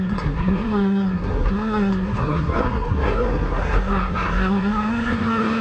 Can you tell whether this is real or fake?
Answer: fake